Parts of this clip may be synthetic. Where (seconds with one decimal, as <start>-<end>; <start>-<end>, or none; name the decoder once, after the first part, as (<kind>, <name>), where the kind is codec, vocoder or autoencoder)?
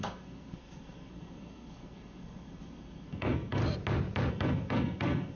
0.0-3.6 (codec, SNAC); 4.3-5.4